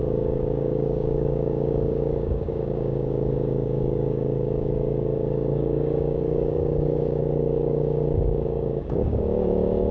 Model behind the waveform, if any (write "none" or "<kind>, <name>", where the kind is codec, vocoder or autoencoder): codec, DAC